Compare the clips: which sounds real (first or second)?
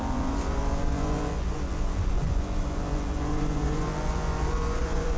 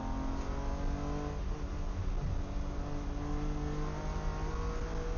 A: second